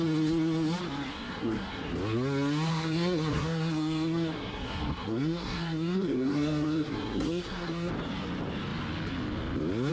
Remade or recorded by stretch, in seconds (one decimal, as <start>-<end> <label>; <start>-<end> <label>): 0.0-1.1 recorded; 1.1-1.9 remade; 1.9-2.7 recorded; 2.7-7.9 remade; 7.9-9.9 recorded